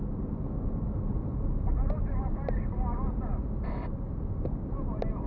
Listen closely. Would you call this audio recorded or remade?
recorded